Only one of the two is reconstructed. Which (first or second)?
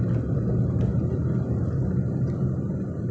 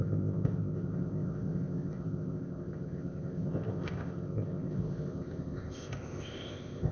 second